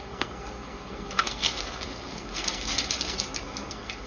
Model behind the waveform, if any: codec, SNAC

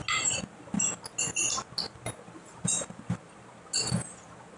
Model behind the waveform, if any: none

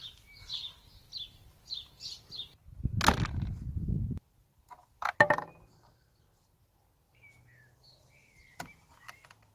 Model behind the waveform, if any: none